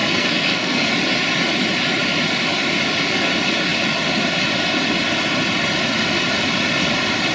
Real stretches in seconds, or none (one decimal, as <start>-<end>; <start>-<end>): 0.9-7.3